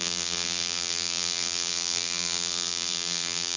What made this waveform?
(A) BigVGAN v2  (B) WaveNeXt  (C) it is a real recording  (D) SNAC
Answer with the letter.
A